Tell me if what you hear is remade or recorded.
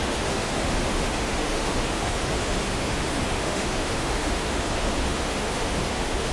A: remade